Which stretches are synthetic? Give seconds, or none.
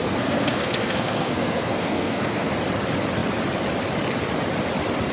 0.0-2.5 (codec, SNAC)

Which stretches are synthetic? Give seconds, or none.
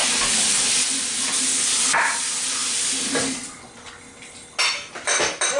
none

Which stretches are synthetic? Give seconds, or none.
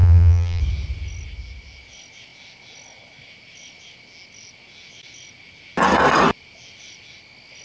0.0-0.6 (vocoder, BigVGAN v2)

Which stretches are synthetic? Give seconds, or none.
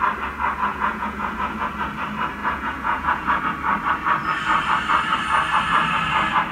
0.7-1.7 (vocoder, Vocos); 2.4-3.4